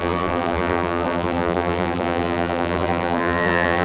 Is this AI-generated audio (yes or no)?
yes